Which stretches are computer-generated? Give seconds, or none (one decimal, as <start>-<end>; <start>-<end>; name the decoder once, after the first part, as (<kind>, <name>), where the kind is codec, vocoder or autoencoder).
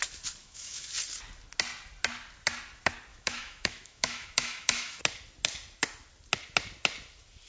0.4-0.9 (autoencoder, DAC-VAE); 3.1-5.0